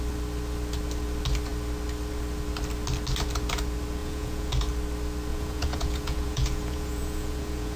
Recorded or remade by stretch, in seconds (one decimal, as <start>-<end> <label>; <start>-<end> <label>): 0.0-4.0 recorded; 4.0-4.5 remade; 4.5-5.3 recorded; 5.3-7.8 remade

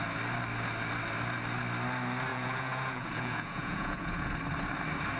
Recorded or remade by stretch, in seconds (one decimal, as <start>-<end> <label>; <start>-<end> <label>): 0.0-2.3 recorded; 2.3-4.3 remade; 4.3-5.2 recorded